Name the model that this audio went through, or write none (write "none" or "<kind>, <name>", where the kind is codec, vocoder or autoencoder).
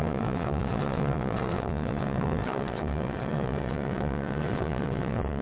vocoder, WaveNeXt